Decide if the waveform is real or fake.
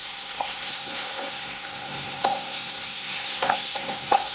fake